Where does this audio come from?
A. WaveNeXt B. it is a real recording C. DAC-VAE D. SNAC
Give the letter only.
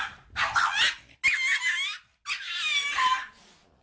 B